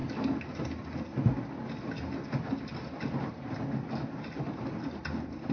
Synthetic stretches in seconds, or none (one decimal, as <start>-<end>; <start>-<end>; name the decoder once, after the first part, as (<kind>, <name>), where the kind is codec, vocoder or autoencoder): none